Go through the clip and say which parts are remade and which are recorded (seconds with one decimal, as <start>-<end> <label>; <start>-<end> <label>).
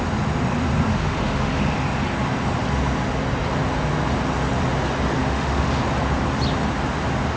0.0-0.9 recorded; 0.9-1.6 remade; 1.6-5.2 recorded; 5.2-5.8 remade; 5.8-7.4 recorded